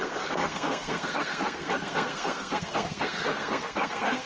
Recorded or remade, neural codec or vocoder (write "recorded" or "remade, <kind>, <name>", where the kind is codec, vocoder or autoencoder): remade, codec, SNAC